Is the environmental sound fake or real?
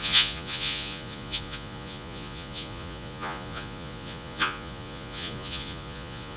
fake